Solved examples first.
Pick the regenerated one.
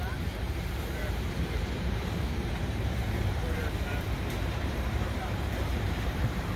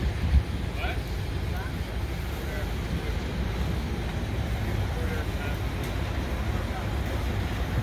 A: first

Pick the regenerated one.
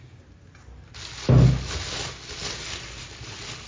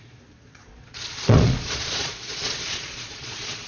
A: second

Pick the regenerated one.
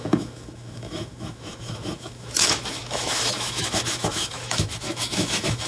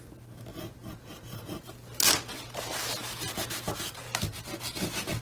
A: first